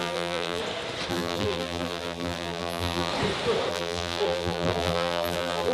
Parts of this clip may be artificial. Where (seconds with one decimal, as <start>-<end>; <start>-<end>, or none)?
0.0-0.6; 1.1-3.1; 3.7-5.7